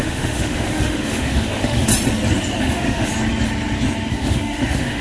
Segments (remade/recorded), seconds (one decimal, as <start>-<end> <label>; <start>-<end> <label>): 0.0-1.9 remade; 1.9-2.6 recorded; 2.6-3.1 remade; 3.1-4.1 recorded; 4.1-5.0 remade